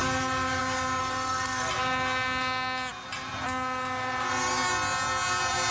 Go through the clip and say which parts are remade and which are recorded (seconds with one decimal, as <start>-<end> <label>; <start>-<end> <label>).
0.0-1.0 recorded; 1.0-1.7 remade; 1.7-5.7 recorded